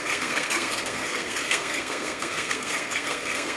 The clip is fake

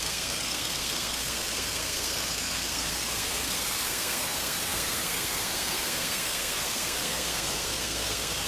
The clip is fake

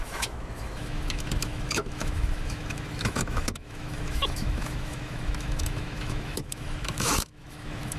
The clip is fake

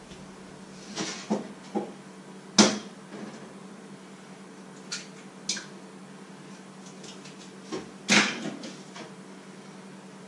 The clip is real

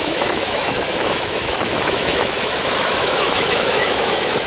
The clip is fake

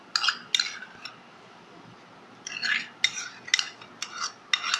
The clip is real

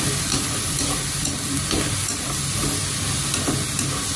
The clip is real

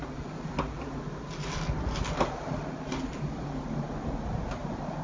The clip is real